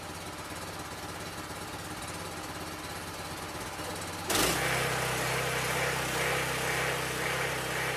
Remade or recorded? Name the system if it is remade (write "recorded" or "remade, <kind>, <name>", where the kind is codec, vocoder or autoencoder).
recorded